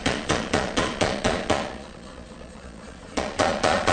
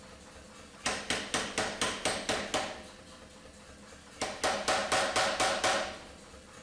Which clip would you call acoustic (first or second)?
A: second